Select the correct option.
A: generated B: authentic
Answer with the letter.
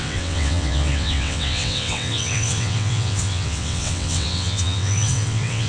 A